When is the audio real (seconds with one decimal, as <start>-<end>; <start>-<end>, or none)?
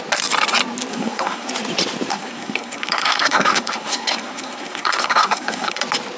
0.0-0.9; 1.5-2.1; 5.8-6.2